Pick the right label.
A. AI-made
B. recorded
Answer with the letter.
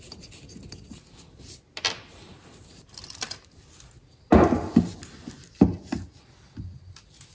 B